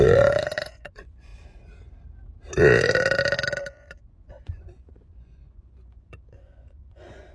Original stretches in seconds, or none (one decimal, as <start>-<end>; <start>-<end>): 1.3-3.7

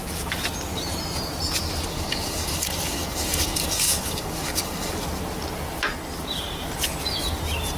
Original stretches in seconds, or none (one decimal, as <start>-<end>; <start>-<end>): 0.0-1.9; 4.9-7.8

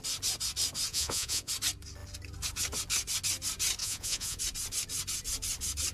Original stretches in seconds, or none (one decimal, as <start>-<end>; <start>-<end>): 0.0-0.9; 1.5-3.8; 4.4-5.9

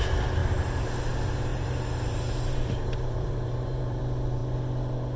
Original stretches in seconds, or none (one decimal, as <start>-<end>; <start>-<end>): 0.0-0.4; 1.1-1.5; 4.0-5.2

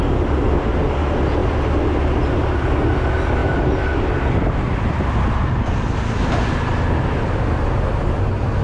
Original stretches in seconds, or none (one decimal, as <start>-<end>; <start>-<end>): 0.0-3.4; 6.0-8.6

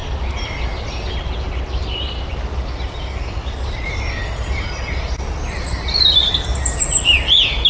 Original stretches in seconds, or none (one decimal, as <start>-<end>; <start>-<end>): 0.0-7.7

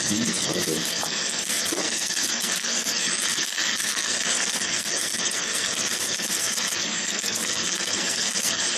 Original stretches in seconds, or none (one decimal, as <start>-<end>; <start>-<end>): none